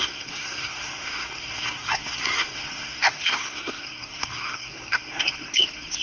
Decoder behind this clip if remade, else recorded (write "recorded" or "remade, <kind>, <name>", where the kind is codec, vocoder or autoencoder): remade, codec, SNAC